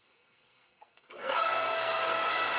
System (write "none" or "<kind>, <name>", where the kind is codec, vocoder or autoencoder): codec, SNAC